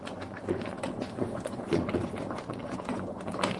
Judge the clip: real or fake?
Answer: fake